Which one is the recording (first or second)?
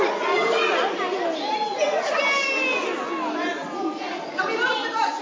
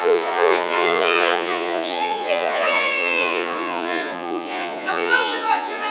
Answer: first